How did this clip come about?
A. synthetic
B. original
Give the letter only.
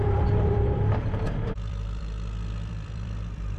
A